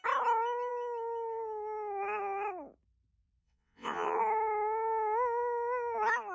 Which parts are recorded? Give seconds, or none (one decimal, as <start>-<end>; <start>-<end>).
0.0-3.4; 4.2-6.3

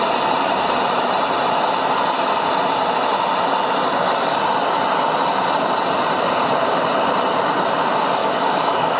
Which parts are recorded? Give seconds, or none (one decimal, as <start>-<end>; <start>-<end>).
0.0-8.2